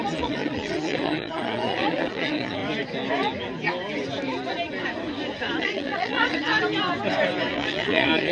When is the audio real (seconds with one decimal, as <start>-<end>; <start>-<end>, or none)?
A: 2.6-5.6; 6.5-7.5